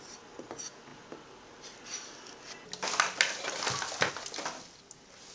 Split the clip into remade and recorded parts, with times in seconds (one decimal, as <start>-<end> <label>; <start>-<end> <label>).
0.0-5.3 recorded